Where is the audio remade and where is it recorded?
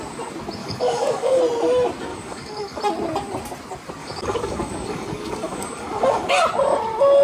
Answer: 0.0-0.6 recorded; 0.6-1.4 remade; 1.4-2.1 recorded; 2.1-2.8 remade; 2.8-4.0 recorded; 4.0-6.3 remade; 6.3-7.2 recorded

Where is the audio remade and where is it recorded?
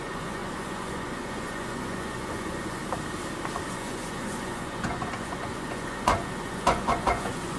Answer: 0.0-2.8 remade; 2.8-3.7 recorded; 3.7-7.6 remade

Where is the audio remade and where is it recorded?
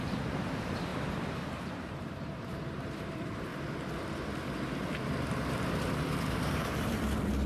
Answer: 0.0-0.9 remade; 0.9-1.5 recorded; 1.5-3.5 remade; 3.5-6.2 recorded; 6.2-7.5 remade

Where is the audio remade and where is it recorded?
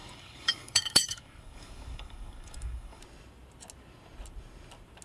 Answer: 0.0-3.0 remade; 3.0-5.0 recorded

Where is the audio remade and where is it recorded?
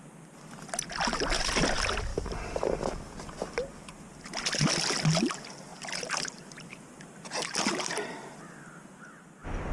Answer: 0.0-5.7 recorded; 5.7-7.9 remade; 7.9-9.7 recorded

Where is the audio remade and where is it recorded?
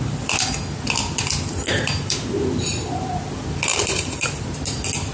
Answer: 0.0-5.1 recorded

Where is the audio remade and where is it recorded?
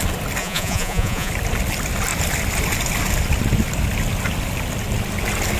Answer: 0.0-0.4 recorded; 0.4-1.3 remade; 1.3-5.6 recorded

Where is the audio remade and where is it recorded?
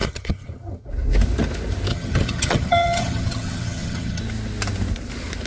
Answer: 0.0-0.9 remade; 0.9-1.9 recorded; 1.9-4.2 remade; 4.2-5.5 recorded